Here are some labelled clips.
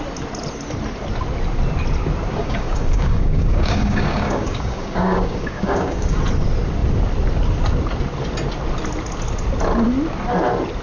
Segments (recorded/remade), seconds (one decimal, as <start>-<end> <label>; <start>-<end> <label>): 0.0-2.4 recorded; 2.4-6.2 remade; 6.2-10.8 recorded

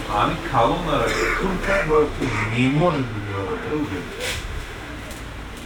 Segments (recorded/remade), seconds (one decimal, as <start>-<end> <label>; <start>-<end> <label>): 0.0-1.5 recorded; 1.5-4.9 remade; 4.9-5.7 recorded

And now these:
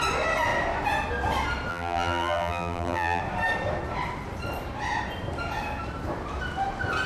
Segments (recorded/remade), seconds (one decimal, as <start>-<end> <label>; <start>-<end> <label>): 0.0-1.7 recorded; 1.7-3.2 remade; 3.2-7.1 recorded

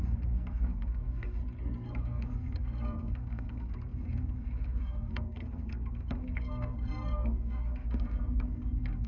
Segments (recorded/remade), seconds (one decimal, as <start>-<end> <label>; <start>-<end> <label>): 0.0-1.4 remade; 1.4-1.9 recorded; 1.9-9.1 remade